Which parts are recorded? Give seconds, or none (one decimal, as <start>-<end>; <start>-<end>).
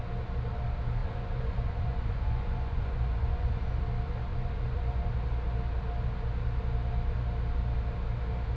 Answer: 0.0-1.0; 3.8-4.3; 5.1-8.6